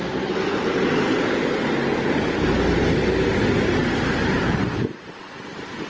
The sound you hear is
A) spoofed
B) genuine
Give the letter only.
B